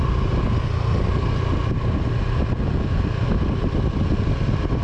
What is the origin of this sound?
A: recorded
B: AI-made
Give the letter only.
A